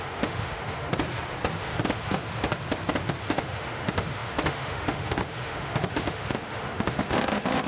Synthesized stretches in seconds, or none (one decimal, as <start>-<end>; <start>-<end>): 0.0-0.9; 1.5-2.3; 3.2-7.7